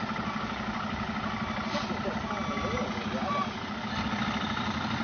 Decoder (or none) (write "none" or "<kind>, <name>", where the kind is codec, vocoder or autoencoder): none